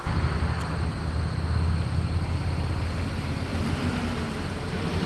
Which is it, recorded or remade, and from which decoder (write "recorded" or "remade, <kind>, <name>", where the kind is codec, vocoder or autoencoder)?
recorded